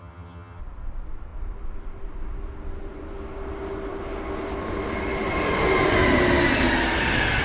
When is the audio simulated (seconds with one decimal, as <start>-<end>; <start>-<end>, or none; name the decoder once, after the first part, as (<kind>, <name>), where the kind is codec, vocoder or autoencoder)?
0.0-0.6 (vocoder, HiFi-GAN)